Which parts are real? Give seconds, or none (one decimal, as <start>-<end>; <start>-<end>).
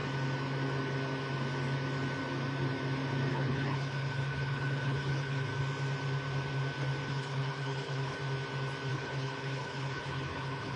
0.0-3.3; 5.5-7.1; 8.2-8.9